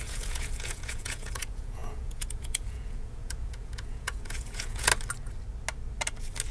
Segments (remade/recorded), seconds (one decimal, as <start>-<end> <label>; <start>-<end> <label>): 0.0-4.9 remade; 4.9-6.5 recorded